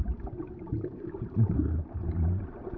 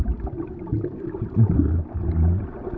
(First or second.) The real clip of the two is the second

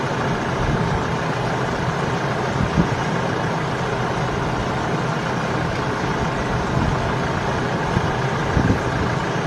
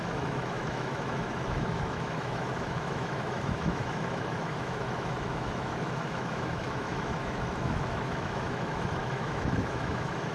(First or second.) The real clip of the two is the first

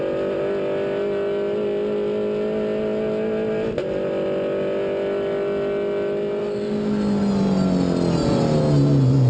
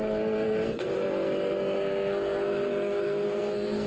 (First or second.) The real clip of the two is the first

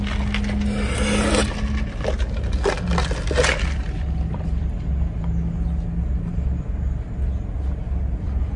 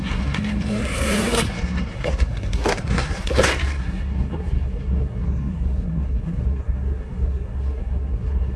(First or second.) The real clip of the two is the first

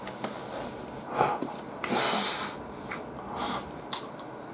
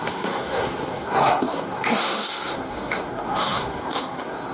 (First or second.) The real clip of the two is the first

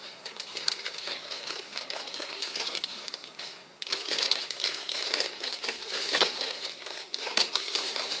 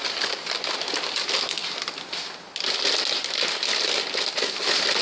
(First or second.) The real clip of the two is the second